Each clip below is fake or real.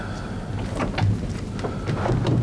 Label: real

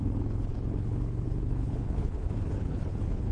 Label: fake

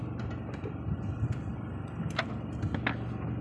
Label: real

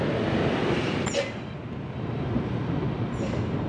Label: real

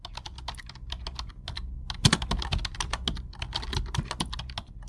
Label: real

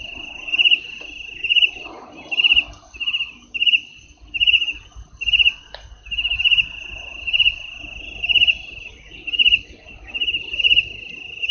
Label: real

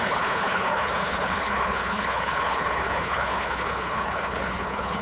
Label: fake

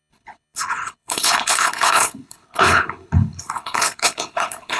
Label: fake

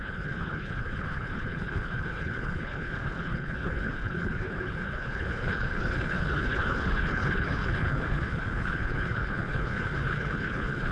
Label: fake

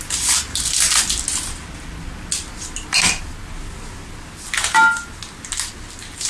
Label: real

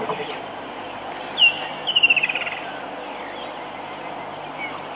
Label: real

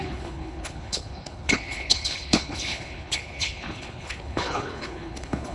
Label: fake